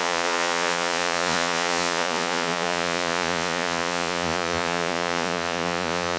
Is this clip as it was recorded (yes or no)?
no